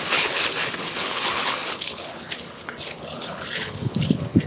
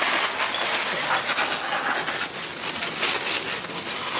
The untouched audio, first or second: second